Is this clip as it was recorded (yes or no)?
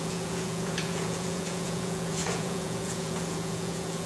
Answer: no